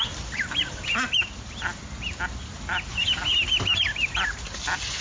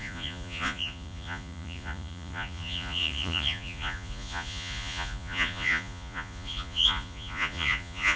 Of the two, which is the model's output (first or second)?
second